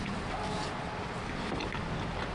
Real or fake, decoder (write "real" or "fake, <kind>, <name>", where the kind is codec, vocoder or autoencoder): real